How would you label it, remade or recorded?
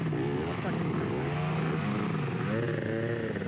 recorded